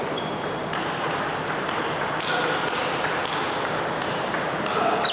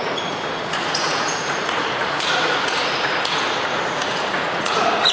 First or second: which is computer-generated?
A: second